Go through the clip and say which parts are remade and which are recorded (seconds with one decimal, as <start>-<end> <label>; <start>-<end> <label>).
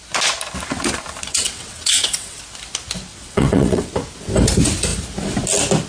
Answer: 0.0-1.3 recorded; 1.3-2.4 remade; 2.4-3.1 recorded; 3.1-3.9 remade; 3.9-5.9 recorded